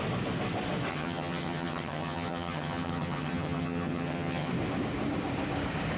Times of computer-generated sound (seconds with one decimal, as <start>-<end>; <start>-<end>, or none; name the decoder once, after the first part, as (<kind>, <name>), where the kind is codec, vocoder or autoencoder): 0.9-4.5 (vocoder, HiFi-GAN)